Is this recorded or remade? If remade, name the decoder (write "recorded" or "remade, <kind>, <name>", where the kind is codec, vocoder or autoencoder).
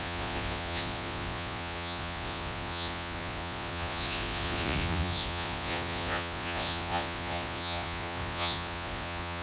remade, vocoder, Vocos